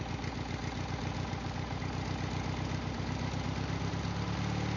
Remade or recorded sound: recorded